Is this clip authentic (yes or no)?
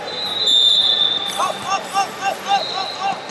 yes